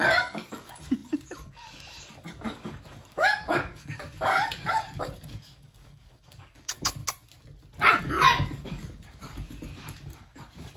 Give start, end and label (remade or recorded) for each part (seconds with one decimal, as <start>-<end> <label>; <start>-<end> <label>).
0.0-7.0 remade; 7.0-8.0 recorded; 8.0-10.8 remade